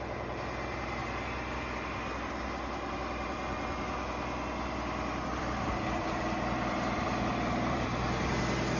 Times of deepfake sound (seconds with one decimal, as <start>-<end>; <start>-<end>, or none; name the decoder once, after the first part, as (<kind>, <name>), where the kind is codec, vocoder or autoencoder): 4.8-8.4 (vocoder, BigVGAN v2)